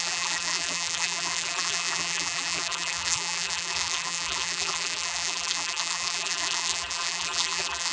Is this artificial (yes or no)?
yes